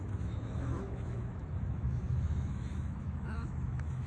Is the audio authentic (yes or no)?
no